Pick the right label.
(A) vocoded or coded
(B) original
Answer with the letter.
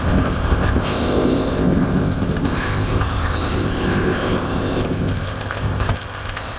A